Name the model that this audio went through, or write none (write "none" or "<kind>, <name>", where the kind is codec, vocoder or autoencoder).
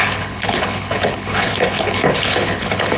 codec, HILCodec